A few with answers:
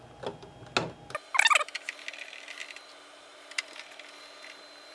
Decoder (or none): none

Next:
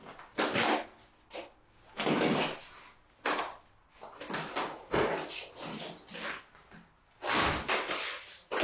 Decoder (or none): none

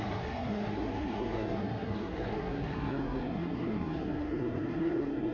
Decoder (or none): codec, SNAC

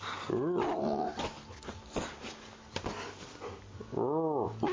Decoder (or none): none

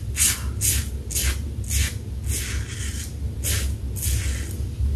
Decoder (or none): none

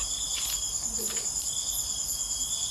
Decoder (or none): none